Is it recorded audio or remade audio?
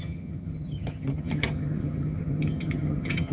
remade